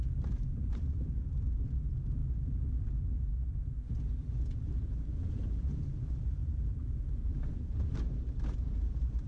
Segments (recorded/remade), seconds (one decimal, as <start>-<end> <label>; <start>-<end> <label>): 0.0-2.2 remade; 2.2-4.5 recorded; 4.5-9.3 remade